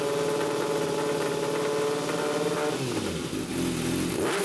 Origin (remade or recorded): recorded